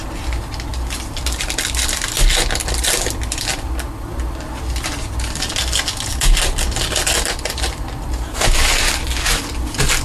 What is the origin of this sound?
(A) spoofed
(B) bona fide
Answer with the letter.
B